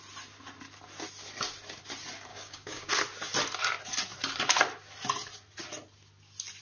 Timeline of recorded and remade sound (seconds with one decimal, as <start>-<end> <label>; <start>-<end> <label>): 0.0-2.3 recorded; 2.3-2.9 remade; 2.9-6.6 recorded